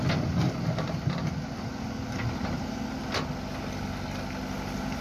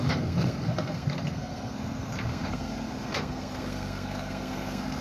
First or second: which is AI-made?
second